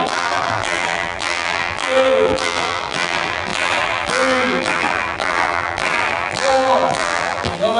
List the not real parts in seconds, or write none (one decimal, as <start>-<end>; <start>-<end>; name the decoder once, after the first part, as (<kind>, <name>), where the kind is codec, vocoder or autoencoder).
0.0-7.8 (vocoder, BigVGAN v2)